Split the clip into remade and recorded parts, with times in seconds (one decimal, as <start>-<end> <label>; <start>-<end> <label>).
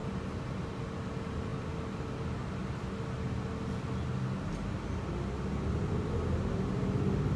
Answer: 0.0-7.4 recorded